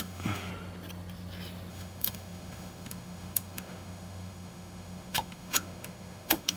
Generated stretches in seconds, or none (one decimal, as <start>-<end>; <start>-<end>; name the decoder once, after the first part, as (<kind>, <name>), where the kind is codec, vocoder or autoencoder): 0.0-0.5 (autoencoder, DAC-VAE); 1.7-6.6